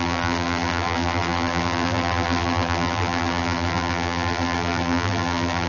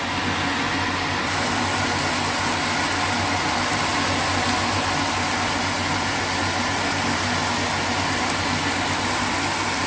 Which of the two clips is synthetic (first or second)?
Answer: first